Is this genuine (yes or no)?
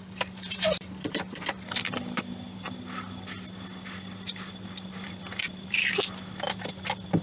no